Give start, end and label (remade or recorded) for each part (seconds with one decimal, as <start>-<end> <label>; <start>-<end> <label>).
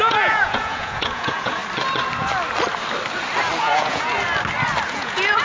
0.0-1.6 remade; 1.6-3.6 recorded; 3.6-4.1 remade; 4.1-4.9 recorded; 4.9-5.4 remade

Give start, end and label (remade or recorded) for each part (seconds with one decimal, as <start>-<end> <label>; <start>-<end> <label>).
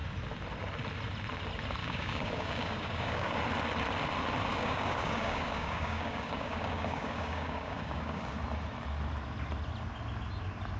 0.0-1.8 recorded; 1.8-3.4 remade; 3.4-4.5 recorded; 4.5-8.2 remade; 8.2-10.8 recorded